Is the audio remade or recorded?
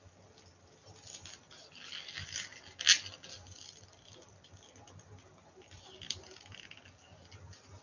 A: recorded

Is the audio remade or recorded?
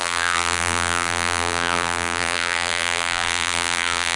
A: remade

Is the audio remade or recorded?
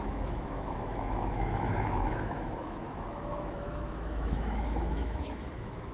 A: remade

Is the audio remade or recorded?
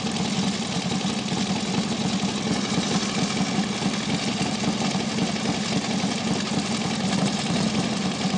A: recorded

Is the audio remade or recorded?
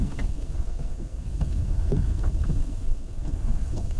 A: remade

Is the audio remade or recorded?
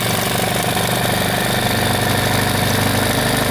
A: recorded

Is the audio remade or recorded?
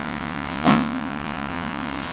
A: remade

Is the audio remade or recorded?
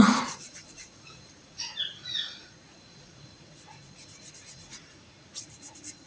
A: remade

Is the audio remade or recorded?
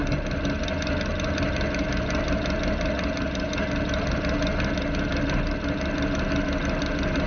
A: recorded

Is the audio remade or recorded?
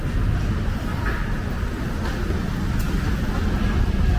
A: recorded